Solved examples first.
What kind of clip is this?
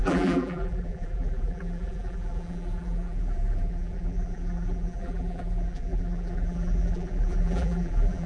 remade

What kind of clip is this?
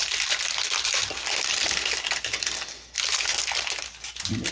recorded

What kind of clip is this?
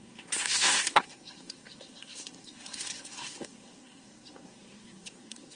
remade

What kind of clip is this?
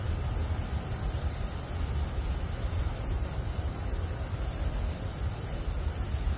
recorded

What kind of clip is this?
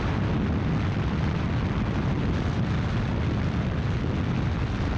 recorded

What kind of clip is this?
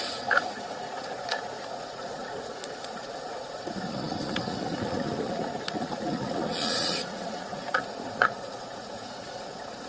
remade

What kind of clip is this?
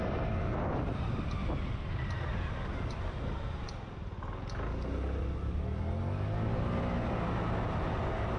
recorded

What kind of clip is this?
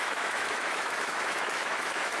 remade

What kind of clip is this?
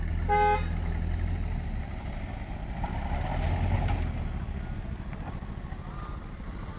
recorded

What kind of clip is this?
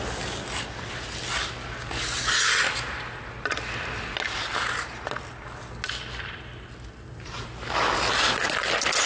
recorded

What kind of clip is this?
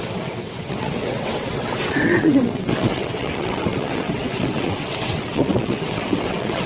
remade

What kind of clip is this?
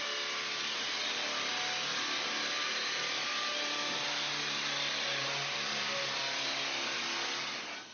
recorded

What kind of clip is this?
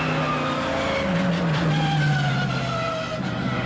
recorded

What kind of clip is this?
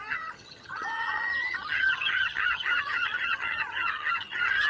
remade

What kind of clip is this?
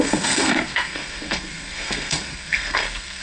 remade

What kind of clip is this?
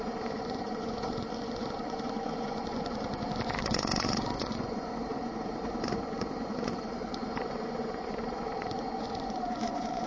remade